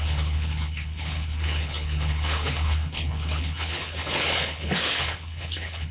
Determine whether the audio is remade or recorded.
remade